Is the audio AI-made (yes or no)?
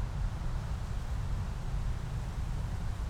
no